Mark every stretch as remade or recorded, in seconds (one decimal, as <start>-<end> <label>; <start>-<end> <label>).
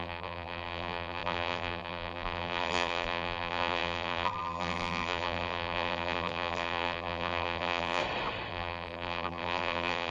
0.0-8.0 remade; 8.0-8.5 recorded; 8.5-10.1 remade